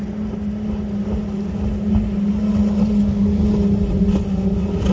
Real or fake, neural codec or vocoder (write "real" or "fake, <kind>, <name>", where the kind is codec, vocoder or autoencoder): real